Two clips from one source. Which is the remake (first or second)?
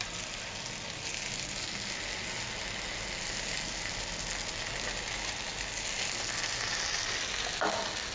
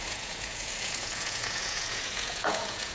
second